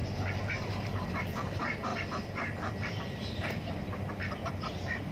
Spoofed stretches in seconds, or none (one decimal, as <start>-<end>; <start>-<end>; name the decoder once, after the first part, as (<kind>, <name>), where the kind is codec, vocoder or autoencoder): 0.0-1.1 (vocoder, BigVGAN v2)

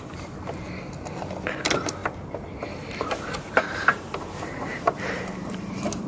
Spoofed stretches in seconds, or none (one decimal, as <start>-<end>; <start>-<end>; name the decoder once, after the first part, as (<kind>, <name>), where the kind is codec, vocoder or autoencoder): 2.0-6.1 (vocoder, BigVGAN v2)

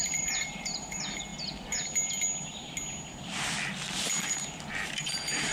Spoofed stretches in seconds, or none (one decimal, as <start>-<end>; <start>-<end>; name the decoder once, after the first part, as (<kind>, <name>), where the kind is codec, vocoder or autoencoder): 0.0-1.3 (vocoder, BigVGAN v2); 4.6-5.5

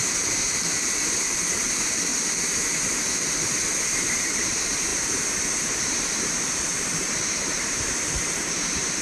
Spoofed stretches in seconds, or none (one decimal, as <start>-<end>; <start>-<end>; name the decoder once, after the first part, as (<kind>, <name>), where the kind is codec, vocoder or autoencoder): 0.0-2.1 (vocoder, BigVGAN v2); 4.0-9.0